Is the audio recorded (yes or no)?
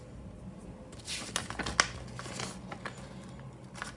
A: yes